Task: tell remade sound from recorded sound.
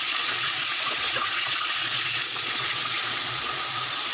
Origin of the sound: remade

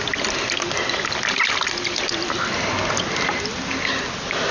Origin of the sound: recorded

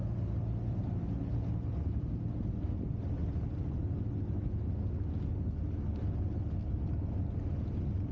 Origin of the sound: recorded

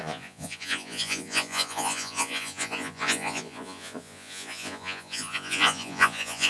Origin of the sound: remade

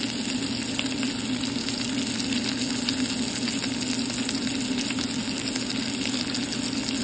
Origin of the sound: recorded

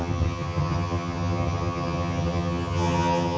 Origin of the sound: remade